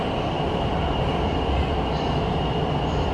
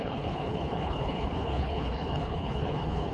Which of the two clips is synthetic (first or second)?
second